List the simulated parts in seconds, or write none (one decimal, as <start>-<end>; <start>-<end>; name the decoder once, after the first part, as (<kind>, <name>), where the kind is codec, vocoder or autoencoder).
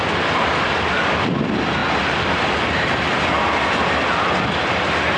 none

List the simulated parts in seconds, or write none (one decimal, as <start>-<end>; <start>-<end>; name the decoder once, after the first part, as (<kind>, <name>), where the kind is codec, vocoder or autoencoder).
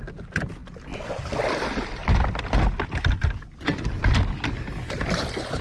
none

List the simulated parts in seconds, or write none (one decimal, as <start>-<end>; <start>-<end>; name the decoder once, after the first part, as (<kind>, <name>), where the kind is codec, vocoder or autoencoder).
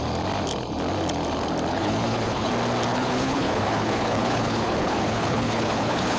1.7-2.5 (codec, HILCodec); 2.9-6.2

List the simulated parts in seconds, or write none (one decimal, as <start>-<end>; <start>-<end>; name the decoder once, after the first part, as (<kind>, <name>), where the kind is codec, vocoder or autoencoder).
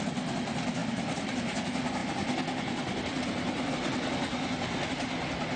0.8-1.6 (vocoder, BigVGAN v2); 2.0-3.7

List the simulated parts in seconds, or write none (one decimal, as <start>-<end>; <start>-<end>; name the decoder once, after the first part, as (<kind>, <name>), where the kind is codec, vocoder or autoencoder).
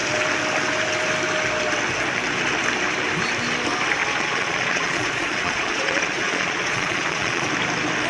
4.0-7.5 (vocoder, Vocos)